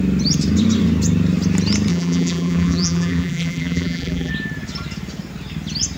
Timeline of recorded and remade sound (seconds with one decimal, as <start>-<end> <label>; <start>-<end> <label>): 0.0-1.9 recorded; 1.9-4.3 remade; 4.3-6.0 recorded